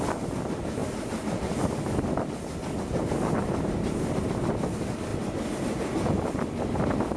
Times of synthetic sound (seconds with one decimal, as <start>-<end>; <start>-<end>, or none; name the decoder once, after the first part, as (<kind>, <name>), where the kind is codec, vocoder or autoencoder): none